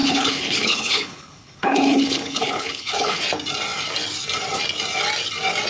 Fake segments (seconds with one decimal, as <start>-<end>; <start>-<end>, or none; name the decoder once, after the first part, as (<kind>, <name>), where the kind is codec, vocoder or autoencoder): 0.0-3.2 (codec, HILCodec)